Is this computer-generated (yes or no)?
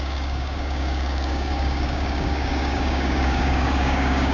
yes